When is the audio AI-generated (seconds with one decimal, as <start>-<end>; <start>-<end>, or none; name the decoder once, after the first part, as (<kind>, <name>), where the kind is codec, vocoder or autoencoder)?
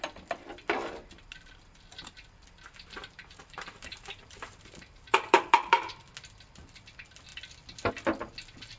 3.0-5.8 (vocoder, BigVGAN v2)